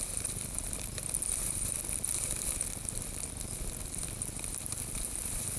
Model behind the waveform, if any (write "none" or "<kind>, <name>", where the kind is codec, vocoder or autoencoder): vocoder, BigVGAN v2